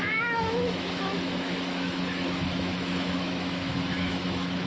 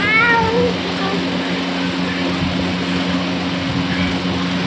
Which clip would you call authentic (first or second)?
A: second